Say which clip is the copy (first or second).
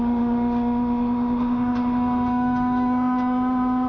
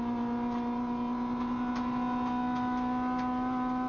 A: first